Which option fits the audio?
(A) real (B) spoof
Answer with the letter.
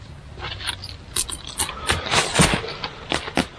A